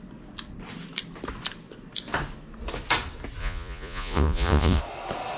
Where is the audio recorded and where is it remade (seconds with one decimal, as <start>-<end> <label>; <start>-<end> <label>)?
0.0-3.4 recorded; 3.4-4.8 remade; 4.8-5.4 recorded